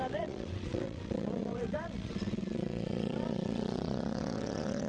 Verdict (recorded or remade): remade